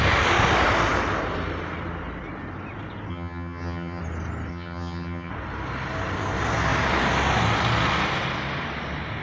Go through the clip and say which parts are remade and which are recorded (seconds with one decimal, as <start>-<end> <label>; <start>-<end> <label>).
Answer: 0.0-3.1 recorded; 3.1-4.0 remade; 4.0-4.5 recorded; 4.5-5.3 remade; 5.3-9.2 recorded